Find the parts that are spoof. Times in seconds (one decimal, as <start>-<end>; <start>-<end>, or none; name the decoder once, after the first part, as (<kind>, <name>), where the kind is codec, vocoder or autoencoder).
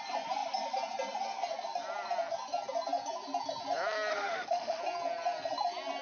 4.1-4.8 (autoencoder, DAC-VAE)